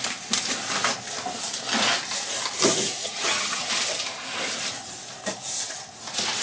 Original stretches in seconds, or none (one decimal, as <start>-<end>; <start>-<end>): 0.0-3.0; 3.7-6.4